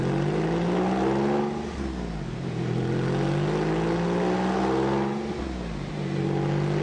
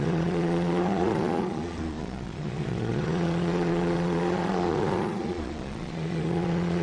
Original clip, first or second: first